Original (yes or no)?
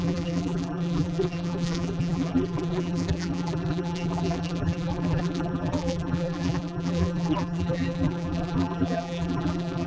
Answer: no